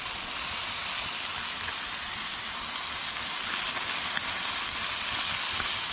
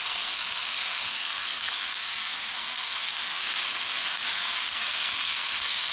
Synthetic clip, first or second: second